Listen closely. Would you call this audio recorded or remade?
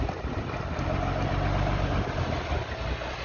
recorded